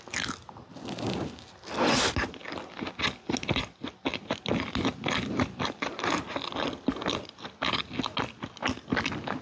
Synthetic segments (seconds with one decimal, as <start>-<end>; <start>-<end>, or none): none